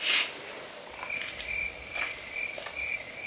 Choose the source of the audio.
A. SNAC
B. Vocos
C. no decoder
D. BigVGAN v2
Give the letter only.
C